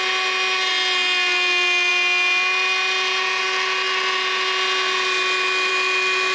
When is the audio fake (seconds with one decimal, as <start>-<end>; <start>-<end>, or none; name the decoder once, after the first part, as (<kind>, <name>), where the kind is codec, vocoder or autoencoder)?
none